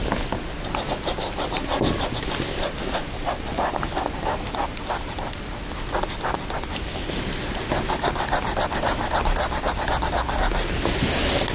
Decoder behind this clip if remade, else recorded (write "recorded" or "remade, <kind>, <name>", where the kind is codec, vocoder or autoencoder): recorded